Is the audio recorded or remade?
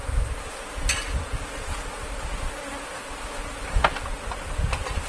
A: recorded